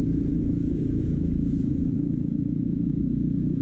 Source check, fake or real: fake